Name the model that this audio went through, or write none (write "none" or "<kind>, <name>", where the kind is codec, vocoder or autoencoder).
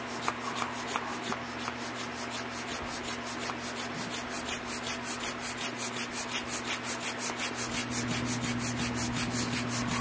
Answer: none